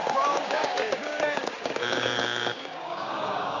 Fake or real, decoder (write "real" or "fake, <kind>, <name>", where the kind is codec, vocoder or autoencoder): fake, codec, DAC